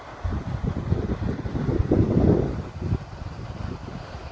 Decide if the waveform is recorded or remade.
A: recorded